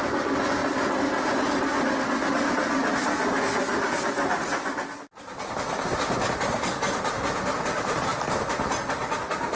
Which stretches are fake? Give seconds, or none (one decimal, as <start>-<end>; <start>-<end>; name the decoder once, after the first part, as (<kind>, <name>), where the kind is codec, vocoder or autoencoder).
none